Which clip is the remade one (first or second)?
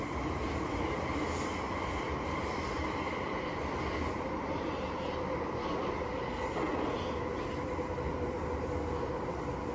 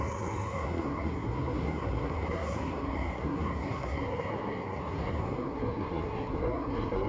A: second